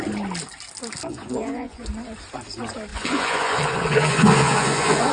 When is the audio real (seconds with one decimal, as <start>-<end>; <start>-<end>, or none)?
0.0-1.1; 1.8-2.9